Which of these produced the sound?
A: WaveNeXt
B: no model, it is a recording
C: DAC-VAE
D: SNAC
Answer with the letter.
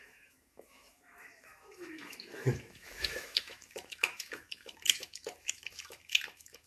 C